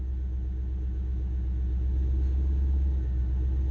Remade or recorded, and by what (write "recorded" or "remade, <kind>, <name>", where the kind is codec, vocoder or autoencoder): recorded